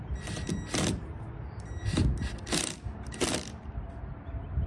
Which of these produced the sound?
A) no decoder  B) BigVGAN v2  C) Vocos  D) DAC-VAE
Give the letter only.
A